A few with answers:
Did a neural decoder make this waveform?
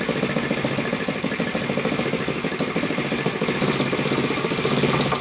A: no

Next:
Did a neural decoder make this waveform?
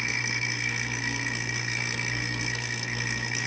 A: yes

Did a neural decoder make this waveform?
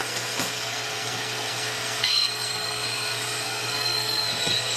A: yes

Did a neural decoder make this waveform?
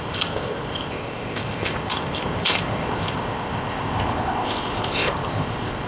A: yes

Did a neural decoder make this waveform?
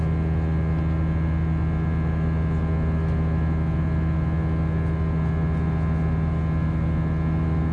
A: no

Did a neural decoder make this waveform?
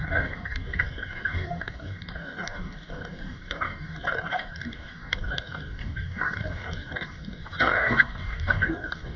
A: yes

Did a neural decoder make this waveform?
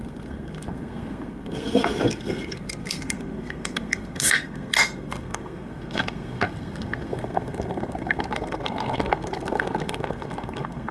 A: yes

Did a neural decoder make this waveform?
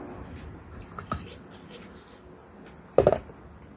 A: no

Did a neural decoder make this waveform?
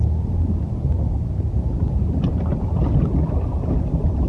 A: yes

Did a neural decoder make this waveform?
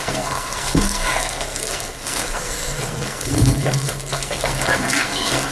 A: yes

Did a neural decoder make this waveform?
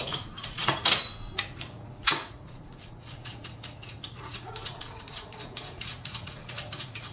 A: yes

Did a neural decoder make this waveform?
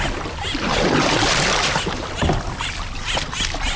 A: no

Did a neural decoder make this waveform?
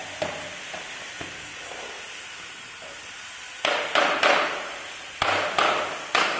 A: no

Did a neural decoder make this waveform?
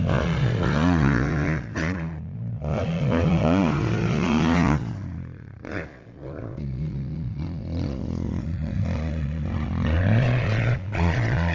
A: yes